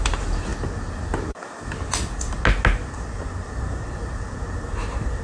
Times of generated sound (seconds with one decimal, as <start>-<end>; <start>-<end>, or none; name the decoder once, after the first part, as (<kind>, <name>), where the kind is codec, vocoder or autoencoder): 0.0-0.5 (vocoder, BigVGAN v2); 3.6-4.0; 4.7-5.2